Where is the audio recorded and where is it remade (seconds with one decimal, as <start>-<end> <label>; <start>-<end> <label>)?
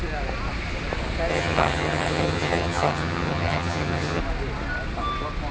0.0-1.3 recorded; 1.3-4.2 remade; 4.2-5.5 recorded